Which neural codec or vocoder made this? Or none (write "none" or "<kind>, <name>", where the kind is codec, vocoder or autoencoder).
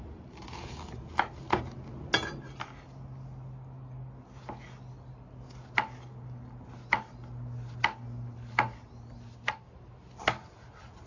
none